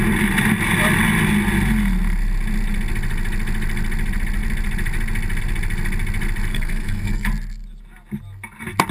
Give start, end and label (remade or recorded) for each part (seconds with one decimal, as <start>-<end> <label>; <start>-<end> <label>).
0.0-6.5 recorded; 6.5-7.3 remade; 7.3-8.9 recorded